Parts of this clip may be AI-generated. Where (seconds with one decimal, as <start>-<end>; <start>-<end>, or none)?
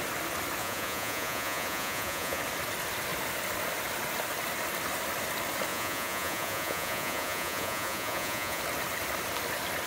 0.6-2.4; 5.7-8.6